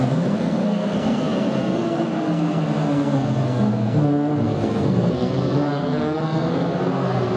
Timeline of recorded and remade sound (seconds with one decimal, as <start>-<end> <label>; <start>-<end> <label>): 0.0-7.4 remade